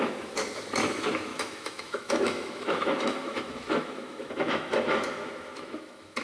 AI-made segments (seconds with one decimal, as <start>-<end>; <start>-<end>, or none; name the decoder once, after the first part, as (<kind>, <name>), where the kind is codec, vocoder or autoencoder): 0.0-6.2 (autoencoder, DAC-VAE)